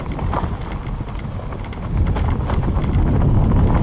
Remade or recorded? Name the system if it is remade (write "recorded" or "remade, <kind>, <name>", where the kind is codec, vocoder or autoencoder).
recorded